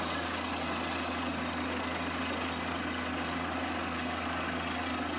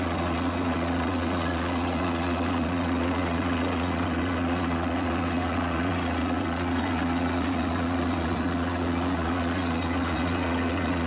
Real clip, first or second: first